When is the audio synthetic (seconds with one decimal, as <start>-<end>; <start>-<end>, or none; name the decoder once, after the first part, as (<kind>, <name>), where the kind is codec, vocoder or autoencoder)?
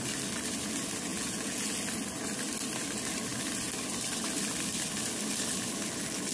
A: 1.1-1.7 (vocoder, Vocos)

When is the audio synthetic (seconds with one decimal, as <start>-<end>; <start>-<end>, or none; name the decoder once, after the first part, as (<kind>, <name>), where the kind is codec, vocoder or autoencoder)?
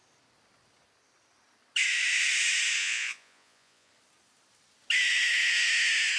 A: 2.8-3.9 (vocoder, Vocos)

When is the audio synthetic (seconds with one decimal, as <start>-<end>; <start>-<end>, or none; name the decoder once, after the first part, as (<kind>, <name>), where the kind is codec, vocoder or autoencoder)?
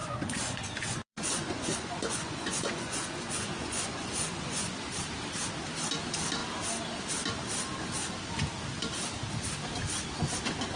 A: 0.0-4.9 (vocoder, Vocos)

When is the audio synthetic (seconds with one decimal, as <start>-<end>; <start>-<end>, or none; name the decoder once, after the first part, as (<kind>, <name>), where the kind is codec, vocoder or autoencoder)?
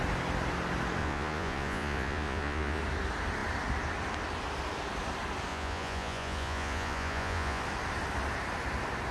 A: 1.0-2.8 (vocoder, Vocos); 5.5-7.6